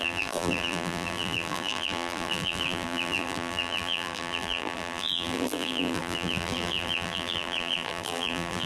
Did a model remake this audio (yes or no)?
yes